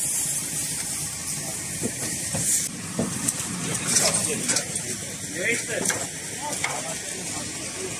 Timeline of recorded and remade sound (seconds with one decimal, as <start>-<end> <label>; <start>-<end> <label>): 0.0-1.2 remade; 1.2-1.8 recorded; 1.8-2.5 remade; 2.5-3.1 recorded; 3.1-5.0 remade; 5.0-8.0 recorded